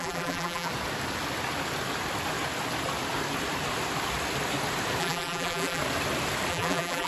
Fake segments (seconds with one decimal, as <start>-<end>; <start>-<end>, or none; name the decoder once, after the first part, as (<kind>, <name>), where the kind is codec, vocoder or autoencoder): 0.0-0.7 (vocoder, BigVGAN v2); 5.0-5.8; 6.5-7.1